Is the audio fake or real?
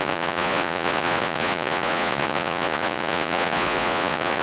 fake